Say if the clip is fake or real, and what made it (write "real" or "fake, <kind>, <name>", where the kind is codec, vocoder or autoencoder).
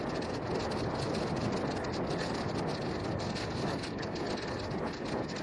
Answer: real